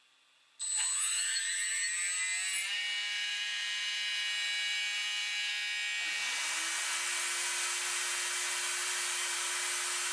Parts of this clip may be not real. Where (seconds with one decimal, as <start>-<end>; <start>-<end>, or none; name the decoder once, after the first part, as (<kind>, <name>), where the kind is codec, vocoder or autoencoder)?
2.6-5.5 (vocoder, BigVGAN v2); 8.8-9.5